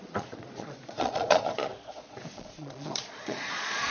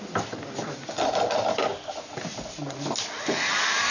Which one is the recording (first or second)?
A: second